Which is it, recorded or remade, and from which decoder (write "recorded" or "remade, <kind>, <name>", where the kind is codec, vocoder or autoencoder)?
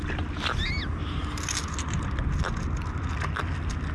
recorded